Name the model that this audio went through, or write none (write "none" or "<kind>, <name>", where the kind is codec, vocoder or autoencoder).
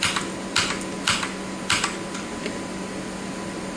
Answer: none